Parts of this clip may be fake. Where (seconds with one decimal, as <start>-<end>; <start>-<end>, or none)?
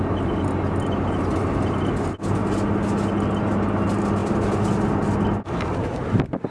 none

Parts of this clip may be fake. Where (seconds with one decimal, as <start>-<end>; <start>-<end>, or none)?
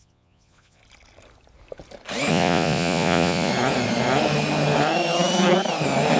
0.0-0.8; 2.3-3.5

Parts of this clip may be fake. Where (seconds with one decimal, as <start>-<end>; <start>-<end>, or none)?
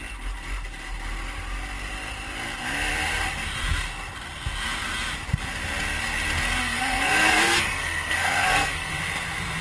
6.6-8.9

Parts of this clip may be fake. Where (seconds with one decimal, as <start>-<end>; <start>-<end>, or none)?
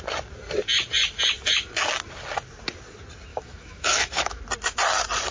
3.3-4.4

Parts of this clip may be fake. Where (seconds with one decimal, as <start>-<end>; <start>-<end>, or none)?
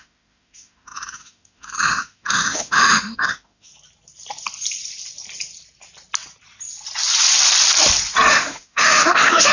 0.0-3.7; 8.3-9.5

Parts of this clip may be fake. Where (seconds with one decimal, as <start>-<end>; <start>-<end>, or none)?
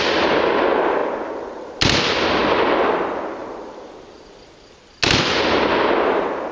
1.0-1.6; 3.4-3.9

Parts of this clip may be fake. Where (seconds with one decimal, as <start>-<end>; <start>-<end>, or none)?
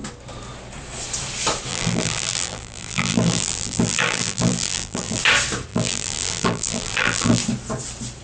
1.7-5.2; 5.7-7.4